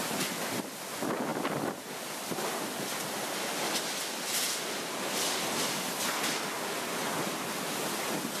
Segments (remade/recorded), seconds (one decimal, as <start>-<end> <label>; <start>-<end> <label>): 0.0-8.4 recorded